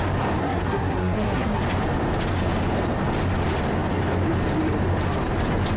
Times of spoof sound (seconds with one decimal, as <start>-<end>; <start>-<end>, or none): 0.4-1.6